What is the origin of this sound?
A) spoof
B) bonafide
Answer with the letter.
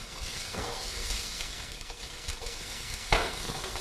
A